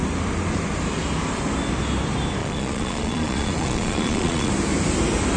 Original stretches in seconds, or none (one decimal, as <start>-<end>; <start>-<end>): 0.0-2.4; 4.5-5.4